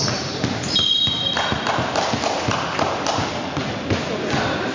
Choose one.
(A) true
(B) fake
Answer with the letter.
A